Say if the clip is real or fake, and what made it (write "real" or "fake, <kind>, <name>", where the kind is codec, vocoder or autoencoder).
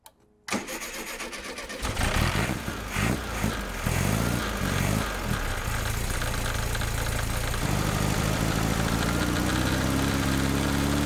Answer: real